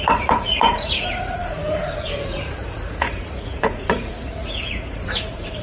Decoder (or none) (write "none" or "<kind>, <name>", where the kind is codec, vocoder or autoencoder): vocoder, Vocos